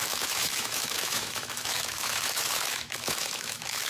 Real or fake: fake